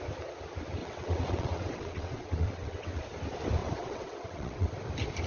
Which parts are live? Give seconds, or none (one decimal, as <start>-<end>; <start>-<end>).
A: 0.0-0.8; 3.0-3.6; 4.7-5.3